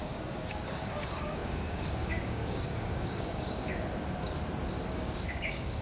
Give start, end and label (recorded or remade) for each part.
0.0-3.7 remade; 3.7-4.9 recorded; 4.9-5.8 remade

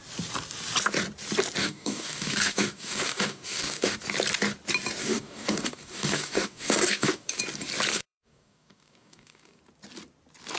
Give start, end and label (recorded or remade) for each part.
0.0-1.6 recorded; 1.6-4.0 remade; 4.0-5.0 recorded; 5.0-7.4 remade; 7.4-7.9 recorded; 7.9-9.6 remade; 9.6-10.6 recorded